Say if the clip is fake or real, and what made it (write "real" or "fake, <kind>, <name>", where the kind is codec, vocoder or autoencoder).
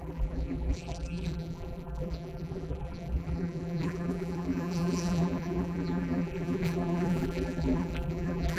fake, vocoder, BigVGAN v2